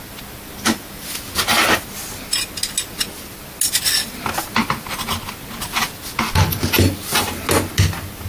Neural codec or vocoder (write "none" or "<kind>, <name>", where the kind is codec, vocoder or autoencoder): none